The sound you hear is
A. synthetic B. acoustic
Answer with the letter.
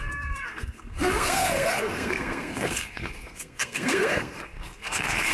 A